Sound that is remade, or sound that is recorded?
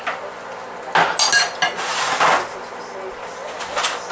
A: recorded